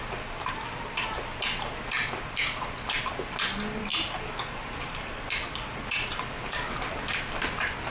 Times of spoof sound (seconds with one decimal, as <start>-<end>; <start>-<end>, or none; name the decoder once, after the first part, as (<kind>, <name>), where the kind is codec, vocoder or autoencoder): none